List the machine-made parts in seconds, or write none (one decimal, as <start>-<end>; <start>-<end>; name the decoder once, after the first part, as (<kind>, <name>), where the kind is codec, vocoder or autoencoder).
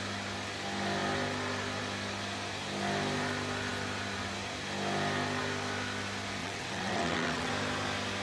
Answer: 6.4-7.5 (vocoder, WaveNeXt)